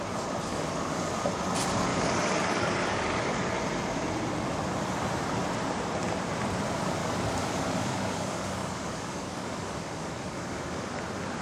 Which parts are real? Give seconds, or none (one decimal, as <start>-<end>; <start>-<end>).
0.0-0.5; 1.1-1.9; 3.5-7.0; 11.0-11.4